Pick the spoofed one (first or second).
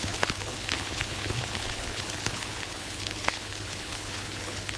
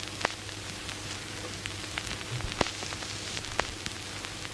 first